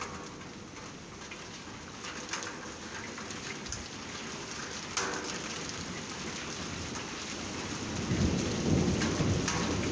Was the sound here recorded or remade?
recorded